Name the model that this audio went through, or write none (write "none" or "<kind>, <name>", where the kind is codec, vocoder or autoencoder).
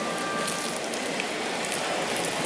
none